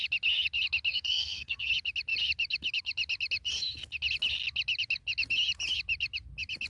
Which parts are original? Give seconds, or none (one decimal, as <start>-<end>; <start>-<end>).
0.0-0.9; 1.7-6.7